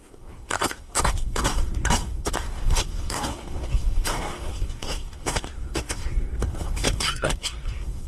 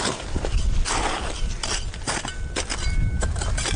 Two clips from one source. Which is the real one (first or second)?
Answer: second